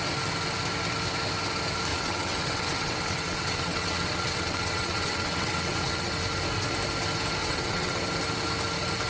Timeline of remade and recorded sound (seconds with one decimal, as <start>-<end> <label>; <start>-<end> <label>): 0.0-1.9 recorded; 1.9-6.1 remade; 6.1-7.4 recorded; 7.4-8.0 remade; 8.0-9.1 recorded

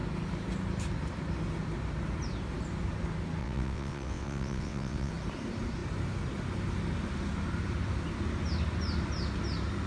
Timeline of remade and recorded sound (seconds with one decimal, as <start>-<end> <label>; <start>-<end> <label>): 0.0-3.4 recorded; 3.4-5.1 remade; 5.1-9.9 recorded

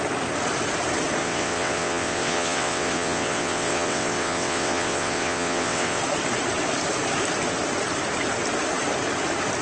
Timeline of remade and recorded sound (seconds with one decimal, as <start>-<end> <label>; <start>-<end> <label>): 0.0-1.2 recorded; 1.2-6.0 remade; 6.0-9.6 recorded

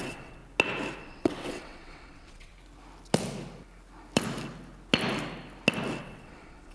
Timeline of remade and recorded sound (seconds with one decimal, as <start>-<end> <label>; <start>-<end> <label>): 0.0-0.4 remade; 0.4-1.0 recorded; 1.0-2.5 remade; 2.5-6.0 recorded; 6.0-6.7 remade